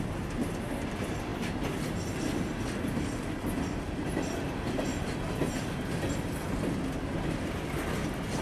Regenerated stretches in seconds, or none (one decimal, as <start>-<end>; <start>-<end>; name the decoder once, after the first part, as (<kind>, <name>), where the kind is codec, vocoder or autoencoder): none